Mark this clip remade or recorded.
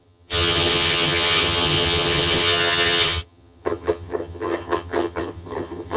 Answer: remade